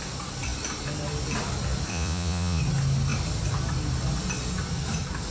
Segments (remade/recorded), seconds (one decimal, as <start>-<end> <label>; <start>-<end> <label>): 0.0-1.9 recorded; 1.9-2.6 remade; 2.6-5.3 recorded